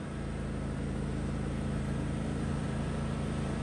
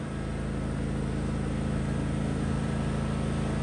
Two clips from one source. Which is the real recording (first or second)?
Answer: second